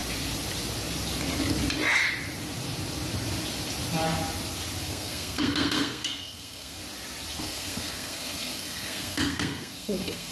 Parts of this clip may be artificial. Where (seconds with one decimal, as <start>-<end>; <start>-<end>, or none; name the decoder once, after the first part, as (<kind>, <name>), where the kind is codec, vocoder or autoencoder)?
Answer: 4.8-6.8 (codec, SNAC); 7.4-10.3